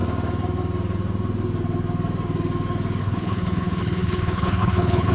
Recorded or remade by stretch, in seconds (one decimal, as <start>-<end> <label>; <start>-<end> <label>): 0.0-3.0 recorded; 3.0-5.1 remade